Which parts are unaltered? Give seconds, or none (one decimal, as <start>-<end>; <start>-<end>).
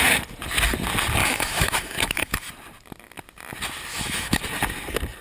0.0-1.2; 2.5-3.9; 4.4-5.2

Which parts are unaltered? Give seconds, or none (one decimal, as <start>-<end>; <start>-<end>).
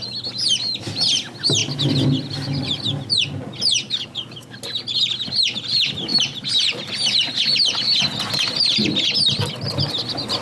0.0-10.4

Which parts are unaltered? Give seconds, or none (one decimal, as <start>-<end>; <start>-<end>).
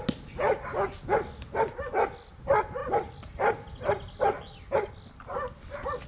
0.0-6.1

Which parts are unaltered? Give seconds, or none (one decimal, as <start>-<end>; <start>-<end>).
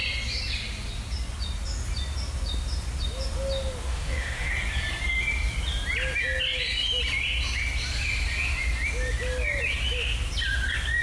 0.0-3.9; 4.5-11.0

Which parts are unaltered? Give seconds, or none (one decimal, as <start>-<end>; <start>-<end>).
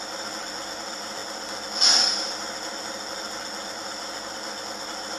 0.0-5.2